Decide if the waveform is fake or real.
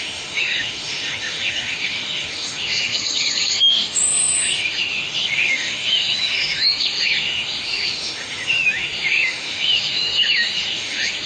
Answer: fake